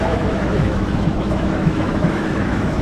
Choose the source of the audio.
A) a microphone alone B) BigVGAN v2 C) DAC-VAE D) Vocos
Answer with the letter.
C